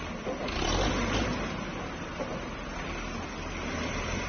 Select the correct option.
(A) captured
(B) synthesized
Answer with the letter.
A